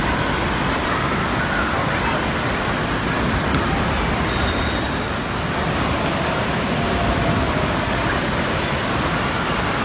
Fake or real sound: real